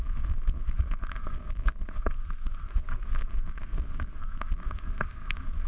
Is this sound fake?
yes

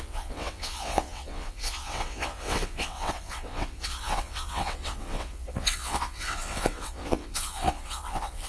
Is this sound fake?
yes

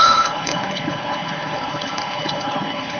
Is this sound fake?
yes